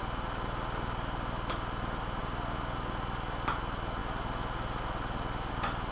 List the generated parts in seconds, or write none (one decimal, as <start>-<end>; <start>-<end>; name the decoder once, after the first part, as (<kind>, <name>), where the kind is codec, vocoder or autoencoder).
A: none